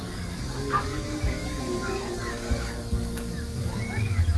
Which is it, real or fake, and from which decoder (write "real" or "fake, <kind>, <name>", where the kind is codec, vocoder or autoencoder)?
fake, codec, DAC